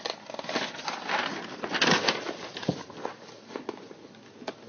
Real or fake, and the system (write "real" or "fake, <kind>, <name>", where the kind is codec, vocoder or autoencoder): real